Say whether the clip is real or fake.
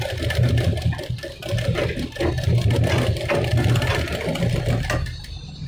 real